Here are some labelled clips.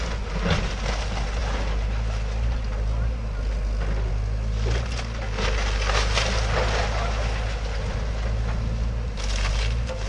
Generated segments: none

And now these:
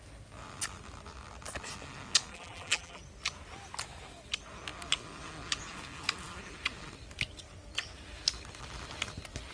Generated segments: 2.3-3.0 (vocoder, BigVGAN v2)